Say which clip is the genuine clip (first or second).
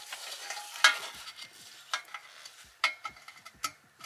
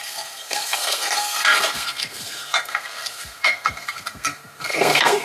first